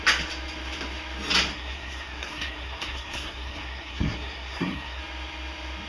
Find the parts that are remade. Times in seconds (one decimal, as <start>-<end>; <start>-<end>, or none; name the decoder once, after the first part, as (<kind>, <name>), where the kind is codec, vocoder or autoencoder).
1.5-5.0 (codec, SNAC)